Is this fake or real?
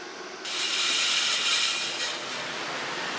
real